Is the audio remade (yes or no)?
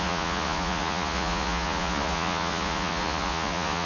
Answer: yes